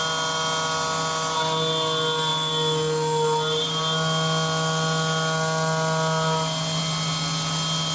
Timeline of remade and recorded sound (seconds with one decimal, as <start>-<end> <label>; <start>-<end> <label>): 0.0-7.9 recorded